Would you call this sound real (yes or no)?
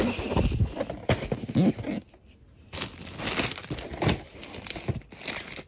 yes